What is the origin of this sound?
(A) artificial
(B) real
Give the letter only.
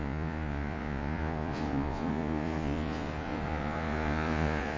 A